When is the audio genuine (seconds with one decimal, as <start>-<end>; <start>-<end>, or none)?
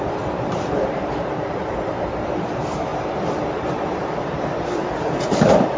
none